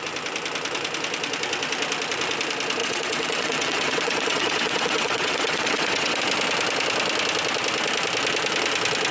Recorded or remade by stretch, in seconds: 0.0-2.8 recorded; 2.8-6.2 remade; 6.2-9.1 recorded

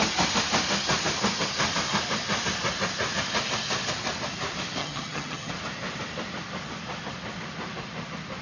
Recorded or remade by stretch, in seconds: 0.0-4.8 recorded; 4.8-5.5 remade; 5.5-8.4 recorded

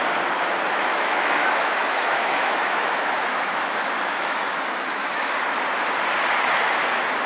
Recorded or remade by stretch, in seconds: 0.0-0.9 recorded; 0.9-5.3 remade; 5.3-7.3 recorded

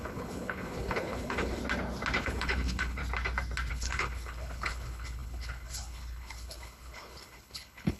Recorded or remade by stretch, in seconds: 0.0-1.6 remade; 1.6-2.2 recorded; 2.2-3.0 remade; 3.0-3.7 recorded; 3.7-8.0 remade

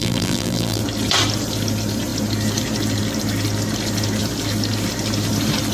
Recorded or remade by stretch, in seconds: 0.0-0.8 remade; 0.8-5.7 recorded

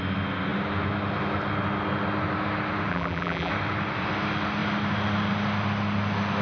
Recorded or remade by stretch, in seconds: 0.0-2.9 recorded; 2.9-3.5 remade; 3.5-6.4 recorded